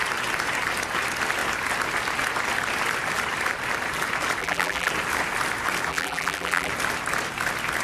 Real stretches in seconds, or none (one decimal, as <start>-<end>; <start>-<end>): 0.0-4.4; 4.9-5.9; 6.7-7.8